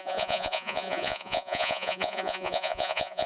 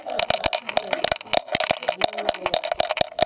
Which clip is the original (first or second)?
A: second